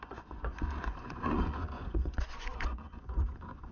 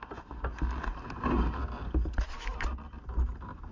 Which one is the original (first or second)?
second